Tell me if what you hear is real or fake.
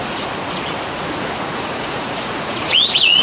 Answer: fake